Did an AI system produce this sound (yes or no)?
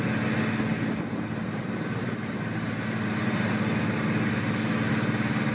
no